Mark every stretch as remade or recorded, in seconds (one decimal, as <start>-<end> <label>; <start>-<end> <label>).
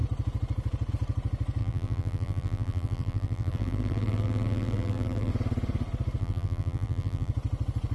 0.0-1.6 recorded; 1.6-5.3 remade; 5.3-6.2 recorded; 6.2-7.3 remade; 7.3-7.9 recorded